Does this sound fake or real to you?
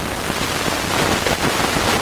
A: real